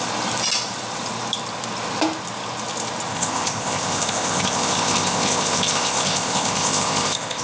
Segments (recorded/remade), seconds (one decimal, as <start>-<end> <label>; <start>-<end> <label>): 0.0-3.1 recorded; 3.1-7.4 remade